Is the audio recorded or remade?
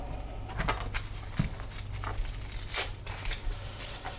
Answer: recorded